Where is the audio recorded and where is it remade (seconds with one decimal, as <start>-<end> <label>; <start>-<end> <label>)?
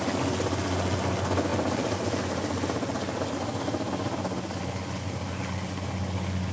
0.0-6.5 recorded